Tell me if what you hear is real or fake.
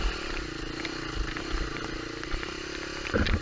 real